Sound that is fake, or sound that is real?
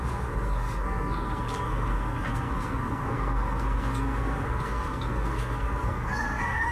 fake